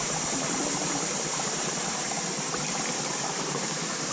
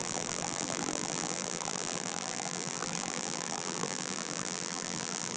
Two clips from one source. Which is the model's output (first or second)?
second